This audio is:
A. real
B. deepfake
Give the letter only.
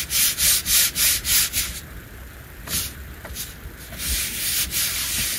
A